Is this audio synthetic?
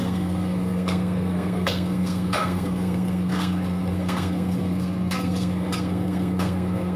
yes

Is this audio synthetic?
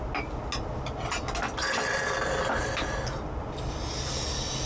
no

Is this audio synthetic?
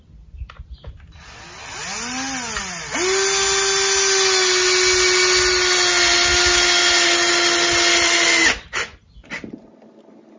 no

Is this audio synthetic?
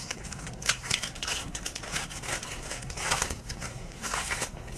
yes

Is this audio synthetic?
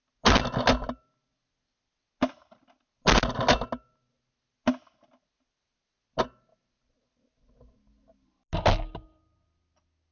no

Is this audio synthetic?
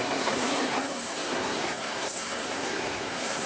yes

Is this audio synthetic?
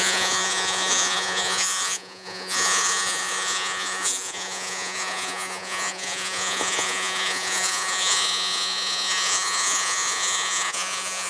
yes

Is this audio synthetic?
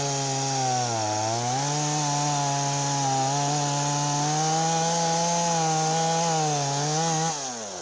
no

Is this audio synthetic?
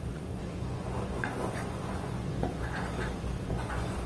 yes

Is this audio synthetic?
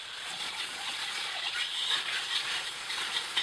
yes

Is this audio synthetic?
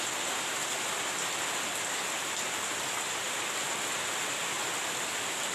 yes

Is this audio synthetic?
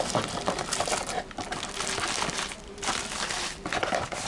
no